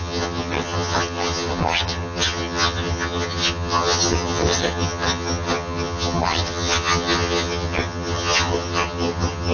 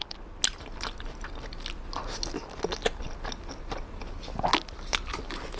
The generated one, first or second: first